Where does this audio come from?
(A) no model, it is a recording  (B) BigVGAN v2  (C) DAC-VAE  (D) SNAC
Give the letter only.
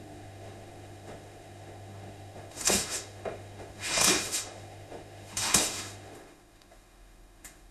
C